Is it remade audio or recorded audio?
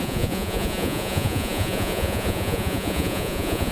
remade